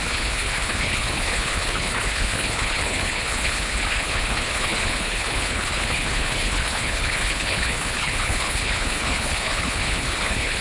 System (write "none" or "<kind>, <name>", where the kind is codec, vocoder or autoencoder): codec, HILCodec